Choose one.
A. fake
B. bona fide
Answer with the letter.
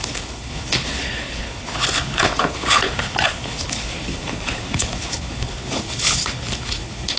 A